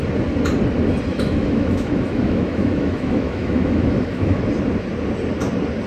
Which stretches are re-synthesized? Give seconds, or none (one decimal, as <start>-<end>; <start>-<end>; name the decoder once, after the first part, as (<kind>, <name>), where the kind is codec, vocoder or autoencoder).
1.1-4.4 (autoencoder, DAC-VAE)